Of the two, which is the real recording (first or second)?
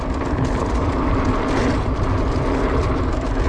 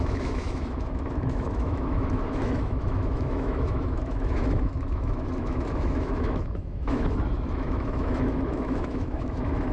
first